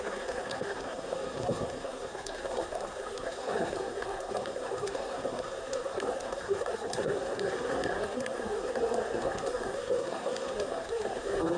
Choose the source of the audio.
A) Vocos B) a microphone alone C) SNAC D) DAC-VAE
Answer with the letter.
C